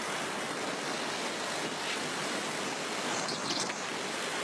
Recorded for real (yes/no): yes